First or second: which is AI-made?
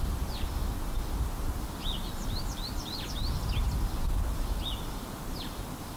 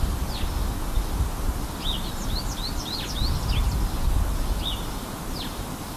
first